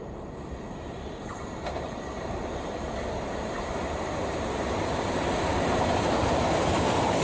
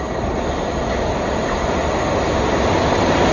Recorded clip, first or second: second